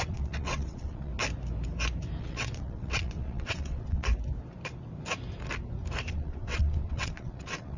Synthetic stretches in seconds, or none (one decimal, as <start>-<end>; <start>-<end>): 0.0-1.1; 2.2-4.1; 6.1-7.8